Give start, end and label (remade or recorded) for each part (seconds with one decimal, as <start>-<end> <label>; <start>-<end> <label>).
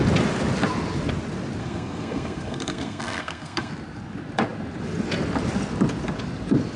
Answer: 0.0-1.6 recorded; 1.6-3.7 remade; 3.7-6.8 recorded